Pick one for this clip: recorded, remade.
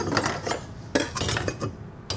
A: recorded